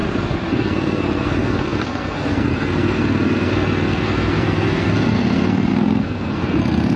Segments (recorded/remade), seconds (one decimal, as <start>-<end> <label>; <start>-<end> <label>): 0.0-0.5 recorded; 0.5-7.0 remade